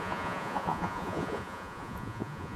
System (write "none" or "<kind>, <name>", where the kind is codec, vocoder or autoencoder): vocoder, Vocos